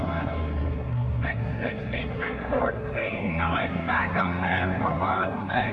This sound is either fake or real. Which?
fake